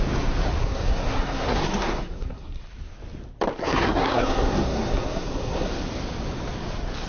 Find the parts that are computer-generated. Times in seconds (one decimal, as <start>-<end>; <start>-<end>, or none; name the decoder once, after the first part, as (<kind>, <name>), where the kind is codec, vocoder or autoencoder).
0.6-2.6 (codec, SNAC); 3.6-5.7